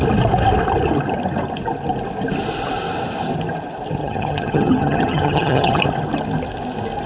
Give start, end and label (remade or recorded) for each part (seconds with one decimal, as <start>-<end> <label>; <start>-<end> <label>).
0.0-4.0 recorded; 4.0-5.8 remade; 5.8-7.1 recorded